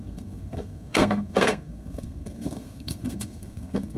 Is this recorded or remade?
remade